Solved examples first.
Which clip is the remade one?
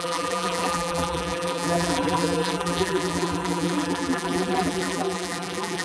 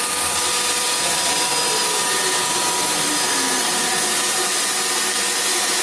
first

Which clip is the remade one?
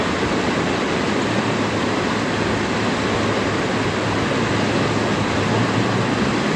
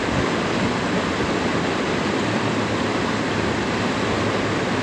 second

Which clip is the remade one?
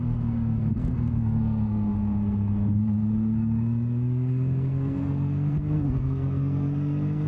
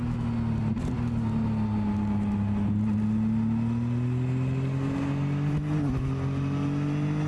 first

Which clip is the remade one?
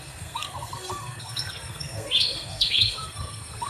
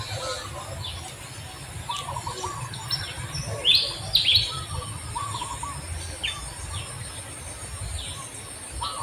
first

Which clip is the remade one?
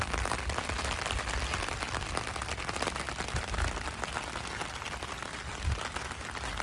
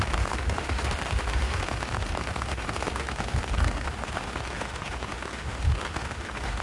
second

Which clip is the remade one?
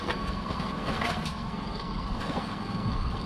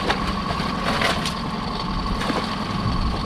first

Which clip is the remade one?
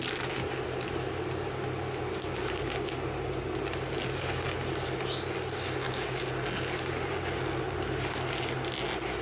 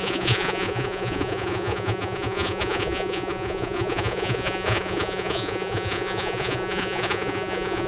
second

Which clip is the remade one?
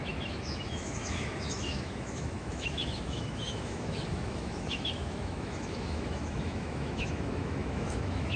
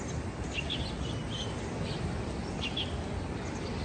first